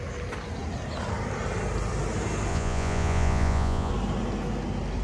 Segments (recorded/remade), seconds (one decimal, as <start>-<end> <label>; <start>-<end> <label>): 0.0-2.5 recorded; 2.5-3.9 remade; 3.9-5.0 recorded